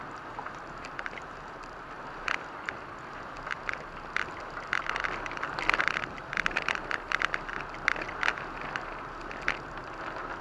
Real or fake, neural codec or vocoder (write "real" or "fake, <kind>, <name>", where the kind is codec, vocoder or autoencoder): real